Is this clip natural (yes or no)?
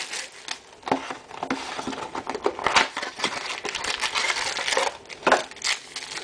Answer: yes